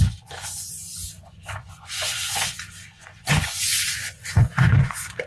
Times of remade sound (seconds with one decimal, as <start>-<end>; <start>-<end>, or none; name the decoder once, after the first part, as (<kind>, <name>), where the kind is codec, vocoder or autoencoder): 0.0-5.3 (vocoder, Vocos)